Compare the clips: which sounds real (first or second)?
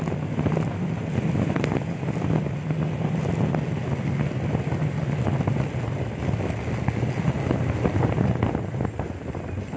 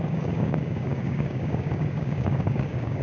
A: first